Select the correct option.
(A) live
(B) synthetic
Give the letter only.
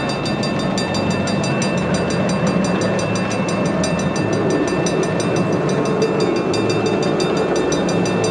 A